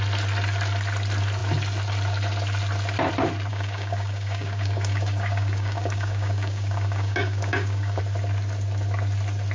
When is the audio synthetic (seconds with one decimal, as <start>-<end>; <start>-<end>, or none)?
3.5-8.0